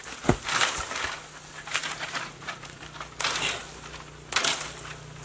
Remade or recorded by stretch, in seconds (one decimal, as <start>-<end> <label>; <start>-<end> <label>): 0.0-1.8 recorded; 1.8-2.8 remade; 2.8-5.2 recorded